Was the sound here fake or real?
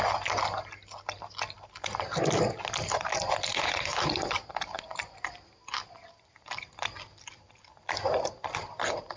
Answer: real